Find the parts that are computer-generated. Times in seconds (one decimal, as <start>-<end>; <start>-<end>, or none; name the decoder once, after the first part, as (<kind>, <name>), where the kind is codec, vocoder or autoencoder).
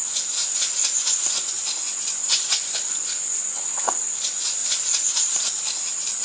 0.0-4.6 (vocoder, Vocos)